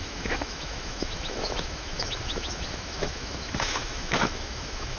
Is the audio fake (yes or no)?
yes